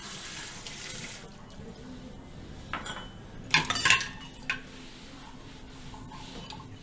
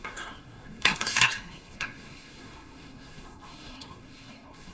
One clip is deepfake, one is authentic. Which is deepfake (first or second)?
second